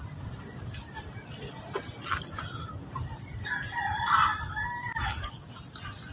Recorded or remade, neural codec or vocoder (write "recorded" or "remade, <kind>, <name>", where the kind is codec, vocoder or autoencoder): recorded